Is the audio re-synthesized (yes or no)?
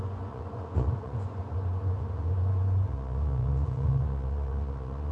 yes